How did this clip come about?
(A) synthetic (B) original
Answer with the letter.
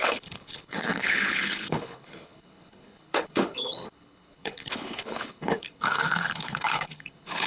A